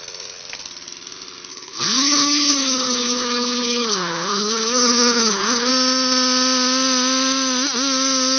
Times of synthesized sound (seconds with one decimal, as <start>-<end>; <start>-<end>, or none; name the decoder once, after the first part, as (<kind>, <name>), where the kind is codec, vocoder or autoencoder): 1.5-5.7 (codec, HILCodec)